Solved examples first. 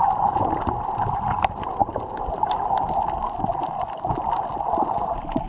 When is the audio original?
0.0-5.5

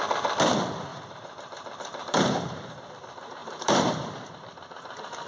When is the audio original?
0.0-0.9; 2.9-3.4; 4.1-5.3

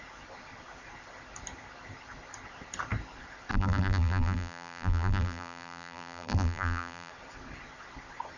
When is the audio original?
0.0-3.5; 7.1-8.4

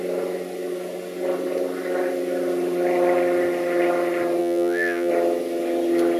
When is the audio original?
0.0-4.4; 5.1-6.2

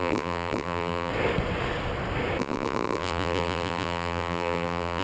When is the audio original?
1.1-2.4

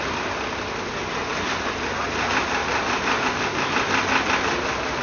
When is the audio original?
0.0-2.6; 3.2-5.0